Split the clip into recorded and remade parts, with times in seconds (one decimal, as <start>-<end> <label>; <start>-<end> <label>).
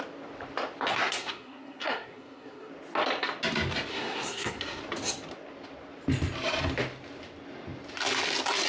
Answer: 0.0-0.9 recorded; 0.9-2.7 remade; 2.7-3.9 recorded; 3.9-4.8 remade; 4.8-8.7 recorded